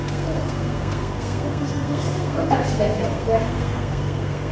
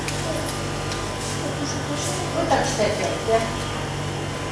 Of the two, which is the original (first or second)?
second